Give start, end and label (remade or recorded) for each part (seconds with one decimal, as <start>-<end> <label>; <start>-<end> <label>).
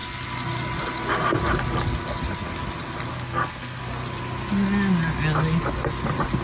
0.0-3.1 recorded; 3.1-3.8 remade; 3.8-6.4 recorded